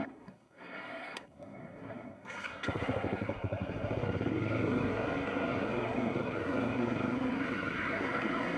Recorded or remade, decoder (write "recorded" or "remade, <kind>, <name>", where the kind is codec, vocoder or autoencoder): remade, codec, SNAC